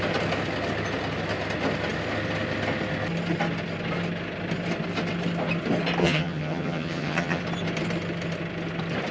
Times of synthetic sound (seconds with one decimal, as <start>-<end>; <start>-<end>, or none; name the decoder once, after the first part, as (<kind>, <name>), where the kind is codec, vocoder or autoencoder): 6.0-7.4 (vocoder, HiFi-GAN)